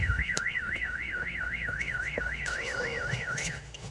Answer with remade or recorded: remade